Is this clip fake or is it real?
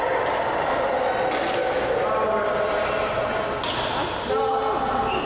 real